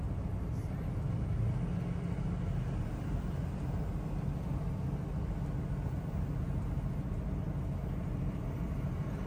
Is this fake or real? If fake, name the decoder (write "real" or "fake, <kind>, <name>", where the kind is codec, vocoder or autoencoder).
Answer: real